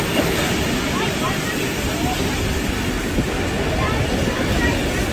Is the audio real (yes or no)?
yes